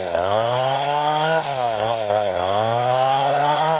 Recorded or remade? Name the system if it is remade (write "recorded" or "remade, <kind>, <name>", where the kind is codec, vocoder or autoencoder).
remade, codec, SNAC